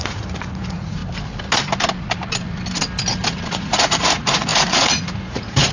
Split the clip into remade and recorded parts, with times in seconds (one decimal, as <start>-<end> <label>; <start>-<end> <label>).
0.0-1.0 remade; 1.0-3.5 recorded; 3.5-5.7 remade